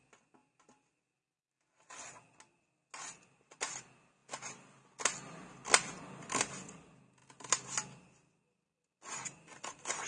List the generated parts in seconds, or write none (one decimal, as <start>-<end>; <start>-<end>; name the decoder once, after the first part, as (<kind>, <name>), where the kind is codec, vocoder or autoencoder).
none